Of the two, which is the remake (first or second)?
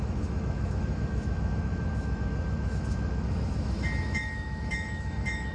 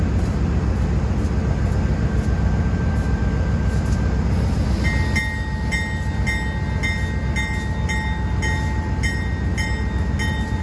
first